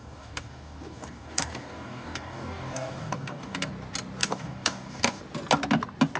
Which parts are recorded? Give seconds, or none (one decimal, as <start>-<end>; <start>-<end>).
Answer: 3.7-4.2; 5.2-6.2